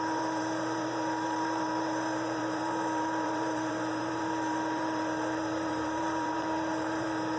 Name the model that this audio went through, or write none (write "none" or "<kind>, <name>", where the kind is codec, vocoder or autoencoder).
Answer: vocoder, BigVGAN v2